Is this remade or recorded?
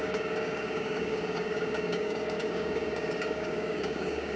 remade